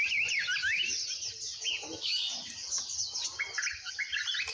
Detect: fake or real real